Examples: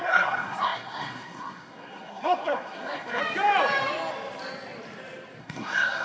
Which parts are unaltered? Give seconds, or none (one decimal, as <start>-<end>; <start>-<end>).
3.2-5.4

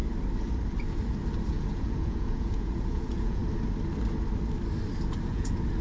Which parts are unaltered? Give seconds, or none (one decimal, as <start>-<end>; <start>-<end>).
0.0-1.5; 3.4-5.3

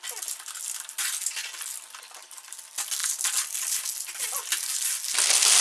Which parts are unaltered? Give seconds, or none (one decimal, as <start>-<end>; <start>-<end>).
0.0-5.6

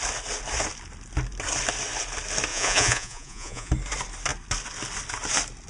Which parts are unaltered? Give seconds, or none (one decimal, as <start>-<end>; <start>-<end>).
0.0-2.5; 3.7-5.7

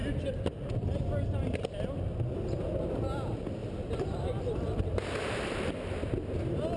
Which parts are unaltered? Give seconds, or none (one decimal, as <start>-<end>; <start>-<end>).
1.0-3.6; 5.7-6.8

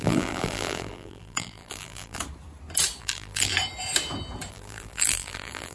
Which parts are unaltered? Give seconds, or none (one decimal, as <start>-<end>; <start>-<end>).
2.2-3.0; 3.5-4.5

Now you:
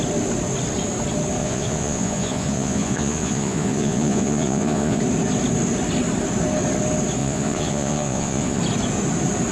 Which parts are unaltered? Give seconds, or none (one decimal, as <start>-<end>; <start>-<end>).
0.0-1.4; 5.0-7.2; 8.6-9.5

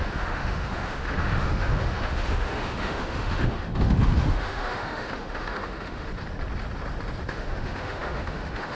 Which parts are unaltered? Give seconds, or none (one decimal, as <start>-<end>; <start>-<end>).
6.1-7.3